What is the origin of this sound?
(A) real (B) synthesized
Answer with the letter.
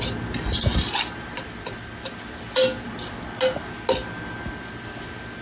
A